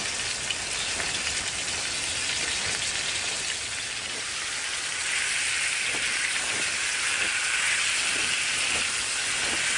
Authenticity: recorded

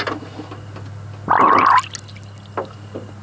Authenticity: recorded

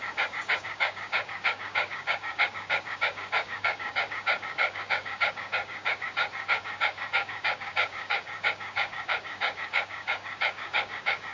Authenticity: remade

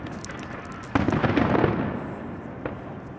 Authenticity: recorded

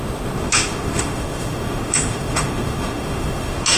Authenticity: remade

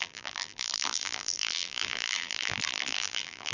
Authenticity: remade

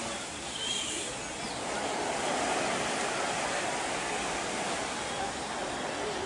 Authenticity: recorded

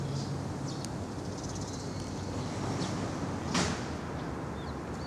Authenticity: recorded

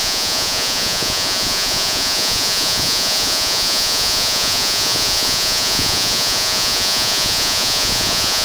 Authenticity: remade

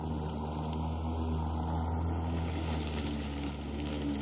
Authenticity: recorded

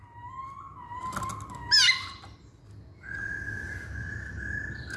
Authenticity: recorded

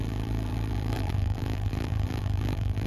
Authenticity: remade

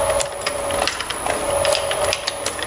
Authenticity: recorded